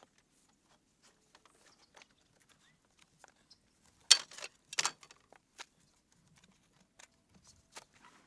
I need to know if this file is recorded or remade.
recorded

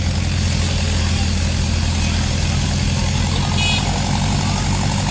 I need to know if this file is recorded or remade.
recorded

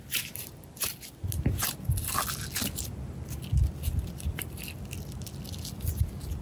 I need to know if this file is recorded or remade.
recorded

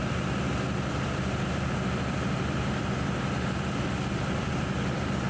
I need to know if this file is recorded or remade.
recorded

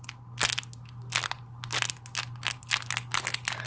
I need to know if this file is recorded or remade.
recorded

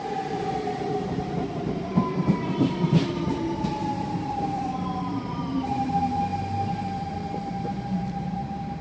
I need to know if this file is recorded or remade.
remade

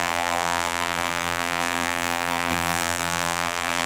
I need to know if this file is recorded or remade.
remade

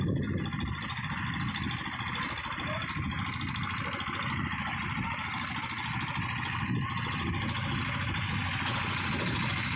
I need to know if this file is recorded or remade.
recorded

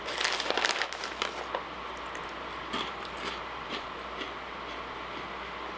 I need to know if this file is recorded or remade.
recorded